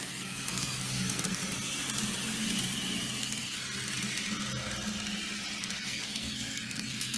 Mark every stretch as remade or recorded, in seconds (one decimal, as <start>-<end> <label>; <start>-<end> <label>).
0.0-1.4 remade; 1.4-3.2 recorded; 3.2-3.6 remade; 3.6-5.6 recorded; 5.6-7.2 remade